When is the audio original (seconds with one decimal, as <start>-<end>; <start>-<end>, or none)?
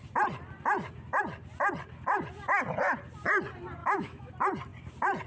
0.0-3.8; 4.3-5.3